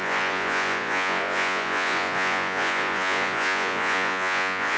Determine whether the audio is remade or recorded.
remade